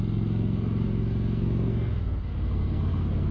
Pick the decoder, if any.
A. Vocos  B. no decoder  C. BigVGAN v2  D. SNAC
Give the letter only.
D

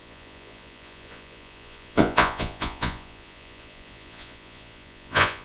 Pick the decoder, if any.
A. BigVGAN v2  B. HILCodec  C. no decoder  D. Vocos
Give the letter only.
D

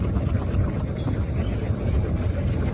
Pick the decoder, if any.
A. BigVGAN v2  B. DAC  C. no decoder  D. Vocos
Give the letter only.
A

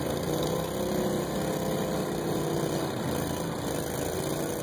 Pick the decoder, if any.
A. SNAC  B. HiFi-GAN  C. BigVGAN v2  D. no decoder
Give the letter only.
D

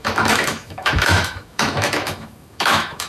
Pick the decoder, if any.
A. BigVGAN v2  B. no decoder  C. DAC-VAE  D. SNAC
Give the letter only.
C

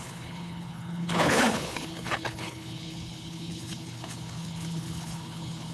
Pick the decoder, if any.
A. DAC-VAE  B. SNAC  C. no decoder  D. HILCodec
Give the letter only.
D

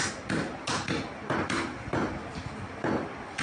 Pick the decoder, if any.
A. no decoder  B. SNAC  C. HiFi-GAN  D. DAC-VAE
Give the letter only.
A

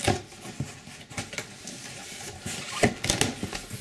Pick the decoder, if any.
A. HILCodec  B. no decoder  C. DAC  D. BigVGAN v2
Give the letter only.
B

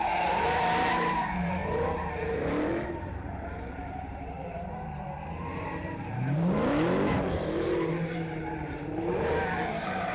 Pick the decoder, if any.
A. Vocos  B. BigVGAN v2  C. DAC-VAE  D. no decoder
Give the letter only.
B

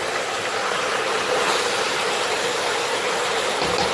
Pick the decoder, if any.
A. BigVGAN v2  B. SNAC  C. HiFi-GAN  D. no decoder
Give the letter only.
A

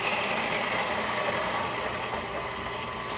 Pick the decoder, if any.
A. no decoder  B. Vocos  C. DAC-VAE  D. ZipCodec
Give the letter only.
A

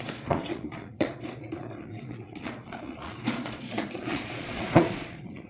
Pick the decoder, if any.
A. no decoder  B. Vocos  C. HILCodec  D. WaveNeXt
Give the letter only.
B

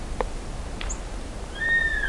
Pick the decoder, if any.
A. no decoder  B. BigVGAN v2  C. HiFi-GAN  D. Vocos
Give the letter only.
A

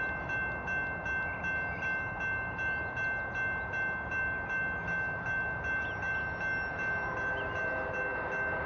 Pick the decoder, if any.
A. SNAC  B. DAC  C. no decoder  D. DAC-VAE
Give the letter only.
C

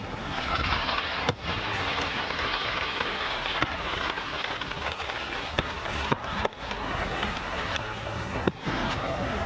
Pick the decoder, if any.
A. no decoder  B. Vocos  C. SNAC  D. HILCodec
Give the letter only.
C